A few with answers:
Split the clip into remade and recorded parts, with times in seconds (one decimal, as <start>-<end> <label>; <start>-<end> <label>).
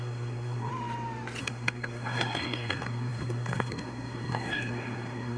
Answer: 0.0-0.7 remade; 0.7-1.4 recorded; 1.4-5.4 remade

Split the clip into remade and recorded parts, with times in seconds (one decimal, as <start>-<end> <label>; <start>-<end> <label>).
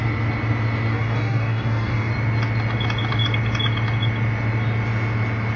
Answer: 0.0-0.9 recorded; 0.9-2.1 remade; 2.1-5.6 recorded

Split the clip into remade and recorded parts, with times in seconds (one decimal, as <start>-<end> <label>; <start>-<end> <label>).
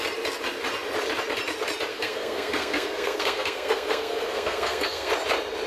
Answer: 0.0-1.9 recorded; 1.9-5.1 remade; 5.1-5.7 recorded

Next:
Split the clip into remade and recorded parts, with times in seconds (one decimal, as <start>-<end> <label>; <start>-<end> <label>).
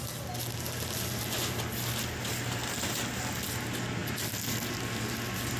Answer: 0.0-5.6 recorded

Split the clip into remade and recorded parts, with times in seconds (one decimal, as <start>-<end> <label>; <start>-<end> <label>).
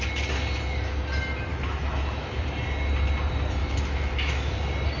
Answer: 0.0-1.5 recorded; 1.5-2.4 remade; 2.4-3.6 recorded; 3.6-4.5 remade; 4.5-5.0 recorded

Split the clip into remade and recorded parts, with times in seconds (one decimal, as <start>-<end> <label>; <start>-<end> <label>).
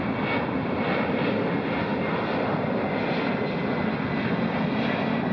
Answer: 0.0-5.3 recorded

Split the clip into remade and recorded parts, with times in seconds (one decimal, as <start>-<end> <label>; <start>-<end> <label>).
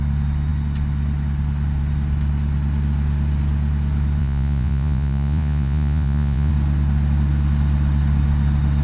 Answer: 0.0-4.2 recorded; 4.2-6.5 remade; 6.5-8.8 recorded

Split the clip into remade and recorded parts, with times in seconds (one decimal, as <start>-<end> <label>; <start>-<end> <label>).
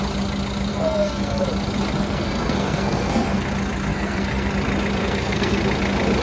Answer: 0.0-0.7 recorded; 0.7-1.5 remade; 1.5-2.0 recorded; 2.0-3.5 remade; 3.5-3.9 recorded; 3.9-4.5 remade; 4.5-5.0 recorded; 5.0-5.6 remade; 5.6-6.2 recorded